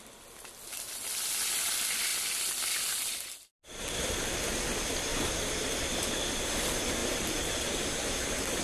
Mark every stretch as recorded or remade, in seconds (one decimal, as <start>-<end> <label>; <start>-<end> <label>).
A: 0.0-5.1 recorded; 5.1-5.7 remade; 5.7-7.0 recorded; 7.0-8.6 remade